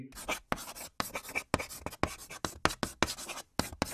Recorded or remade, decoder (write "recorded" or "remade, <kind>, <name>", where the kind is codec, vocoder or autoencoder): recorded